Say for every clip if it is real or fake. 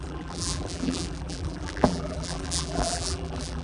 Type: fake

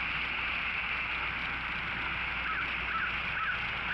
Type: real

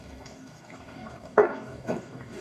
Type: fake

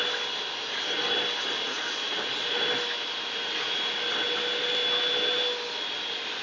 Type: real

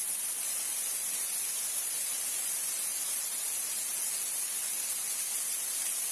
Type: real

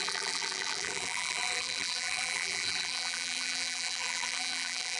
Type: fake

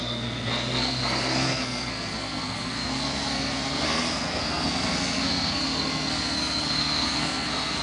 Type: fake